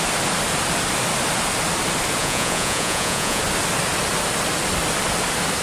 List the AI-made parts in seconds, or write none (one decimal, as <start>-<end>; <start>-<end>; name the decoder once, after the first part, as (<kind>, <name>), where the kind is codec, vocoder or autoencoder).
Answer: 2.2-3.4 (vocoder, Vocos)